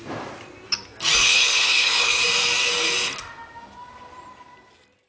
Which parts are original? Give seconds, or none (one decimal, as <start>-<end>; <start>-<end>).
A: 0.0-1.2; 2.2-5.1